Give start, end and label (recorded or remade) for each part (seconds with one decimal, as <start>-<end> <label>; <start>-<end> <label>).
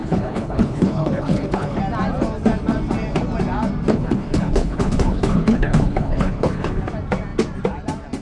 0.0-1.8 remade; 1.8-3.9 recorded; 3.9-6.8 remade; 6.8-8.2 recorded